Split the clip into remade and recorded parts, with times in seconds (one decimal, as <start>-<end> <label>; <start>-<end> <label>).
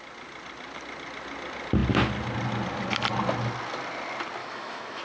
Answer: 0.0-4.4 recorded; 4.4-5.0 remade